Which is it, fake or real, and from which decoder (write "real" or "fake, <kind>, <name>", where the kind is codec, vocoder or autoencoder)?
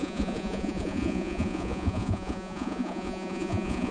fake, vocoder, Vocos